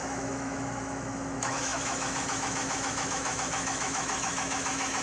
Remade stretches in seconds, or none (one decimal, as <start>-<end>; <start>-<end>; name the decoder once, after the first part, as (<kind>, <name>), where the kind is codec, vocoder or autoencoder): 0.0-5.0 (autoencoder, DAC-VAE)